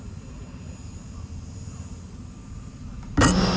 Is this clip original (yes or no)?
yes